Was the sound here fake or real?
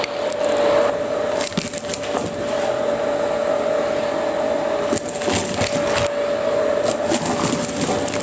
real